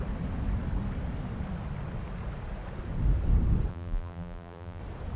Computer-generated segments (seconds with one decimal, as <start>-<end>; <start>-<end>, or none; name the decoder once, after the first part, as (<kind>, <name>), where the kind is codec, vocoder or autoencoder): 3.7-4.8 (vocoder, BigVGAN v2)